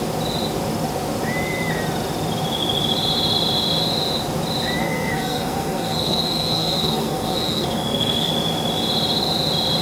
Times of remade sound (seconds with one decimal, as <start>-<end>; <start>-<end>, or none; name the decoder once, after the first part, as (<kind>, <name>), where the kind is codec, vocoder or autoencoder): 4.8-8.3 (codec, SNAC)